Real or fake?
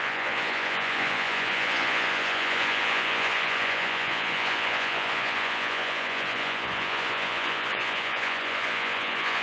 fake